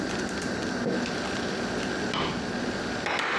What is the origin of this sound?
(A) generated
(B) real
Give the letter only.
B